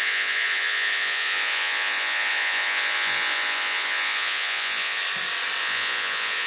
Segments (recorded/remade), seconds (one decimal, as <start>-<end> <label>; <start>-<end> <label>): 0.0-5.0 remade; 5.0-5.6 recorded; 5.6-6.5 remade